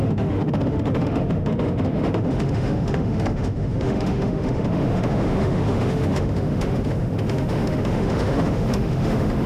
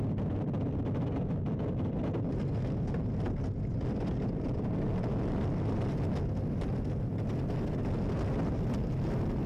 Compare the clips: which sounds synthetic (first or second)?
first